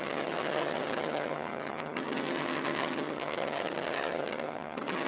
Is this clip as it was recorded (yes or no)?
no